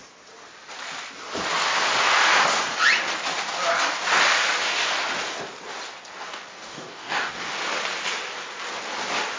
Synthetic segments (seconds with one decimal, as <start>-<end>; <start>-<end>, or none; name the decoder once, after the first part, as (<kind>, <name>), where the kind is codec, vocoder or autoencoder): 6.5-7.5 (codec, DAC)